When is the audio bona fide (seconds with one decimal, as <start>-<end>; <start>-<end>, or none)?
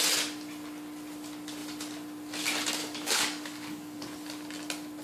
0.0-2.8; 4.0-5.0